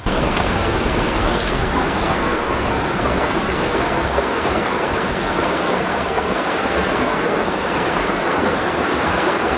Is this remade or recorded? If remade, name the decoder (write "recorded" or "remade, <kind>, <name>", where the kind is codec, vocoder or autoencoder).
remade, codec, SNAC